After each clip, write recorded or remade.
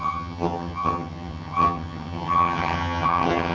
remade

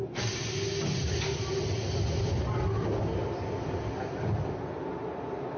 recorded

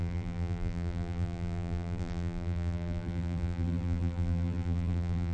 remade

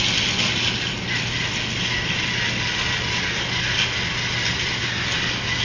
recorded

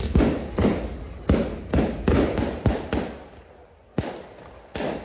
recorded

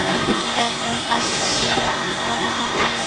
remade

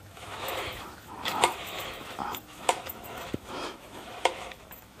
remade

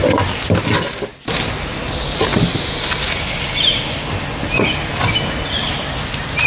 recorded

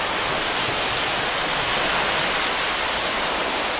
recorded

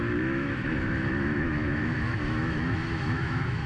remade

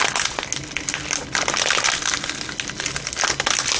recorded